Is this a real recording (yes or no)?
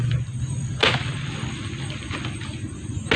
yes